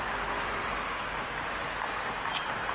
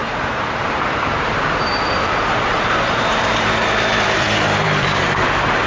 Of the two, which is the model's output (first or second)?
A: second